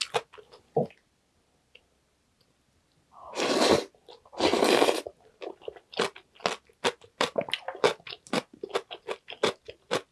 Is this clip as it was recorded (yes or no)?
yes